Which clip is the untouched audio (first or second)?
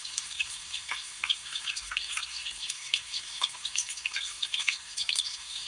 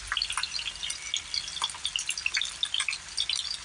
second